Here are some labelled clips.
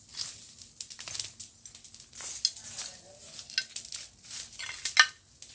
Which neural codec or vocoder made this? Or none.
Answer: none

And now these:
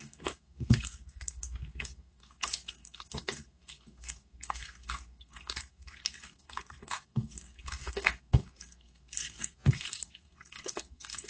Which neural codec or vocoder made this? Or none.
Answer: codec, SNAC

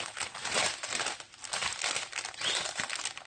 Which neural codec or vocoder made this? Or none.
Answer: none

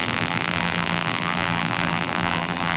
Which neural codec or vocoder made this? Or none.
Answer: vocoder, BigVGAN v2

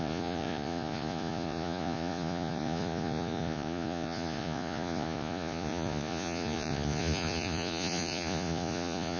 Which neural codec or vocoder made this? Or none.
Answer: vocoder, Vocos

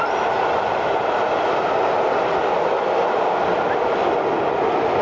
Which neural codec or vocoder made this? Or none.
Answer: none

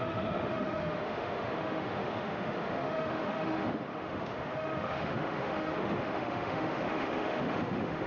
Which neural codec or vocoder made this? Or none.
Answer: autoencoder, DAC-VAE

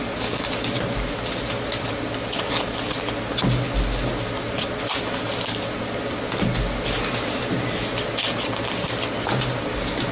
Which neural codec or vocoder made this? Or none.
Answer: none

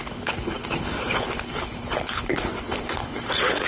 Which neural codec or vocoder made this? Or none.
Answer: codec, HILCodec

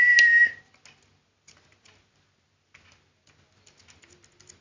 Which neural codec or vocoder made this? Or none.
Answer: none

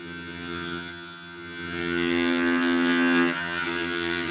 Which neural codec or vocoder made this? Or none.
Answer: vocoder, HiFi-GAN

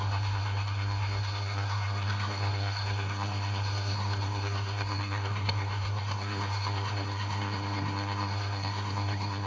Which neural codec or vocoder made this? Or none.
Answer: codec, SNAC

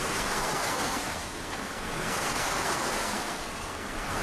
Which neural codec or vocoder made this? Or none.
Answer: codec, SNAC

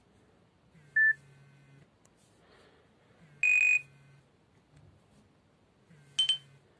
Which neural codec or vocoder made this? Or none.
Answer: none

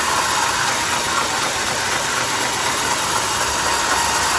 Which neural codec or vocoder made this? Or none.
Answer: none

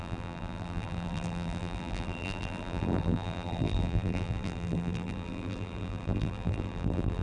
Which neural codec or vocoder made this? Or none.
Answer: vocoder, BigVGAN v2